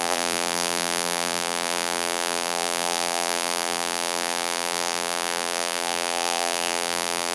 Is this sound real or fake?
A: fake